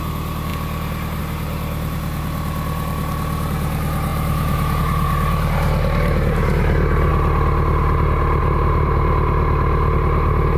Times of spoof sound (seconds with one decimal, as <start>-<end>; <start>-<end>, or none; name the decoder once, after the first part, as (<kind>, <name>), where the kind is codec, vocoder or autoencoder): 0.0-7.1 (vocoder, BigVGAN v2); 8.4-10.6